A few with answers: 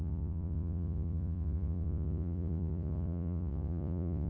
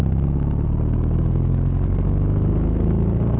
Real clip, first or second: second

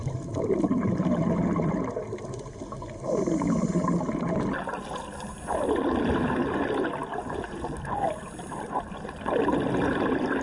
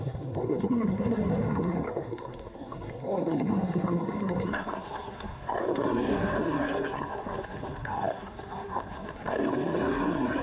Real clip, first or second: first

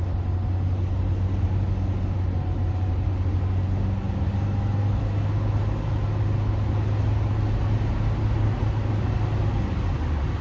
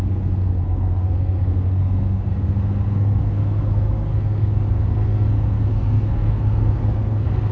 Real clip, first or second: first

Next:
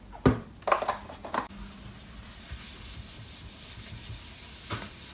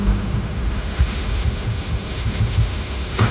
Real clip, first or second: first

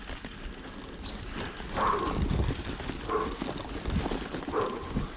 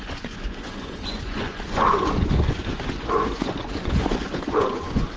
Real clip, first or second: first